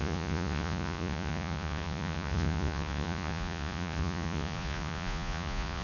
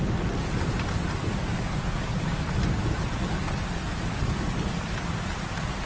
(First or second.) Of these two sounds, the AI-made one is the first